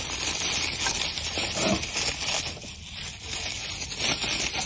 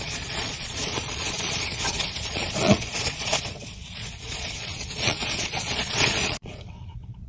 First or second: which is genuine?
first